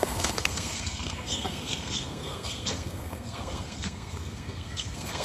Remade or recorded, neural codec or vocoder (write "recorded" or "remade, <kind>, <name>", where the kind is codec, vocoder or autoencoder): remade, codec, SNAC